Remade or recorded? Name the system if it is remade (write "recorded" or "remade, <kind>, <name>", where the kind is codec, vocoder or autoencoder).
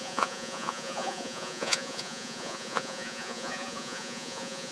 remade, vocoder, Vocos